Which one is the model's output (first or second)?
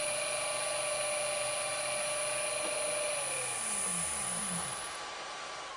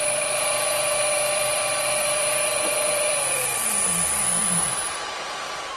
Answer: second